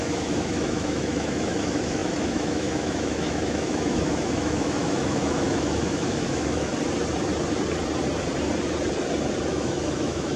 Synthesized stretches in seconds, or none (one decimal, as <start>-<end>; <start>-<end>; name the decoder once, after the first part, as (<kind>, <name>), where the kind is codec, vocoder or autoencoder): 0.0-6.7 (autoencoder, DAC-VAE); 9.5-10.4